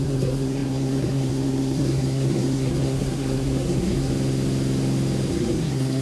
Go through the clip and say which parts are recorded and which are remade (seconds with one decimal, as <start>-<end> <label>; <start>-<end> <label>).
0.0-4.1 remade; 4.1-5.3 recorded; 5.3-6.0 remade